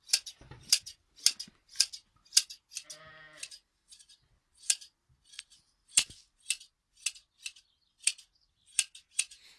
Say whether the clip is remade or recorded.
recorded